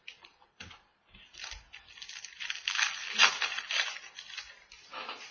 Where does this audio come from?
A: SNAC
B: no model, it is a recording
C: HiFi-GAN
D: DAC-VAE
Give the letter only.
B